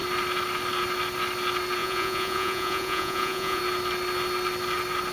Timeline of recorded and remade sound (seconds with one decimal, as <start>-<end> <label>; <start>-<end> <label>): 0.0-1.8 recorded; 1.8-3.6 remade; 3.6-5.1 recorded